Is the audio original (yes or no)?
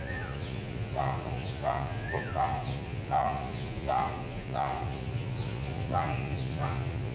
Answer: no